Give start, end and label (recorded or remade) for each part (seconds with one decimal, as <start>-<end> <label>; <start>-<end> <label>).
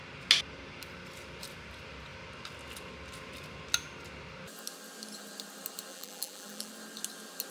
0.0-5.9 recorded; 5.9-6.7 remade; 6.7-7.5 recorded